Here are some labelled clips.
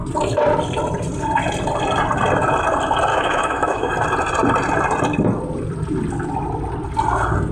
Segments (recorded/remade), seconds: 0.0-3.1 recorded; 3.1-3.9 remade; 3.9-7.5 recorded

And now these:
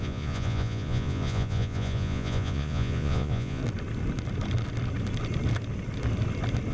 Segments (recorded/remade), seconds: 0.0-3.6 remade; 3.6-6.7 recorded

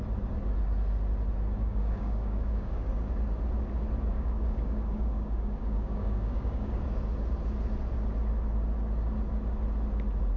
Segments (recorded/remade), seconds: 0.0-1.6 recorded; 1.6-2.9 remade; 2.9-4.1 recorded; 4.1-6.7 remade; 6.7-10.4 recorded

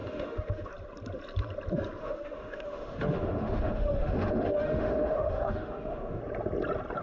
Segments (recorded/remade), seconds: 0.0-0.7 remade; 0.7-2.0 recorded; 2.0-6.2 remade; 6.2-7.0 recorded

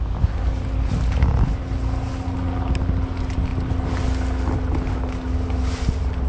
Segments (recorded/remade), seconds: 0.0-6.3 recorded